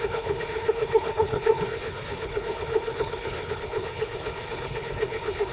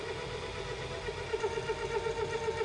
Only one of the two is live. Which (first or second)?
second